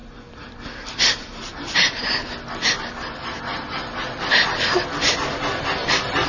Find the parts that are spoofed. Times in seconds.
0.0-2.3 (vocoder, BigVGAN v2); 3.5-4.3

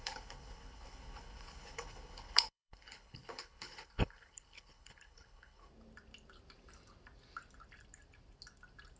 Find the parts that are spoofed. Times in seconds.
0.0-5.7 (codec, HILCodec)

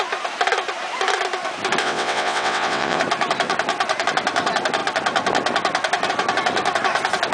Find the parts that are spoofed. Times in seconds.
1.8-3.0 (vocoder, WaveNeXt)